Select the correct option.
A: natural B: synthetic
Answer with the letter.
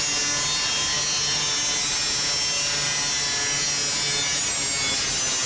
A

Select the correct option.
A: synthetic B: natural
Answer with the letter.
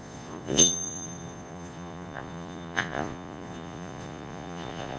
A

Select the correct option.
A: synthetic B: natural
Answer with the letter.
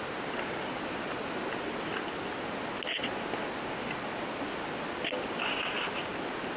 B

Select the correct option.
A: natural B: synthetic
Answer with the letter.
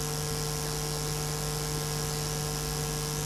A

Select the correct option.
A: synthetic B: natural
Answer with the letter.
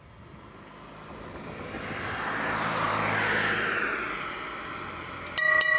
B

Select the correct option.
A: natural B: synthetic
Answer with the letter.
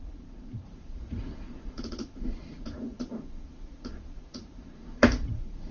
B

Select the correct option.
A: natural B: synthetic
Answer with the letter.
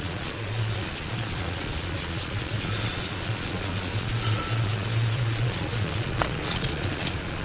B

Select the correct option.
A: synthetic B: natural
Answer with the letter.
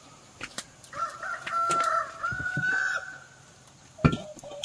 B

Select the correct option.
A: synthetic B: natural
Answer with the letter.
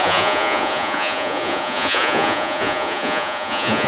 A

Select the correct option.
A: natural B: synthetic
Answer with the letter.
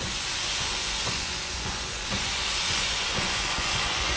B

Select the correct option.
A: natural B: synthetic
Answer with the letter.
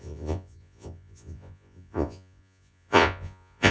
B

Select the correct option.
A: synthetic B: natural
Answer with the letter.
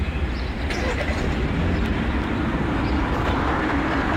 B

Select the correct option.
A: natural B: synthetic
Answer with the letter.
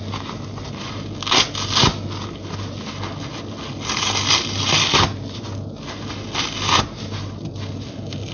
A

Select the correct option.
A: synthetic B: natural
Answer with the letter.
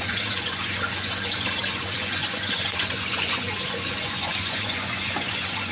A